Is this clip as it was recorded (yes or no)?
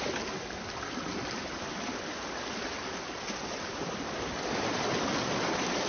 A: yes